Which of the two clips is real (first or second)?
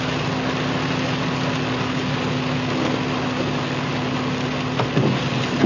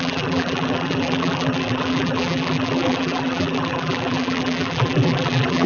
first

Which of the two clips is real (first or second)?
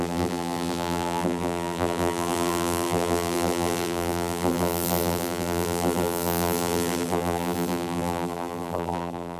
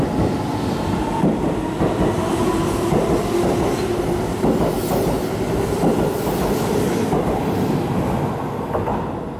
second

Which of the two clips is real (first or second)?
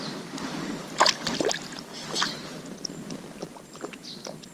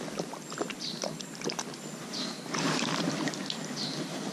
first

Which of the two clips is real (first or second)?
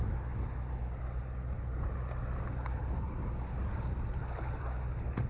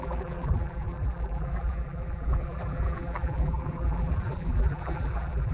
first